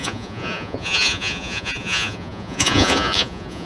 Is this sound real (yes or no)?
no